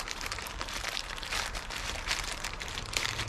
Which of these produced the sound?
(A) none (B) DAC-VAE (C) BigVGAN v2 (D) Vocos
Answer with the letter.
C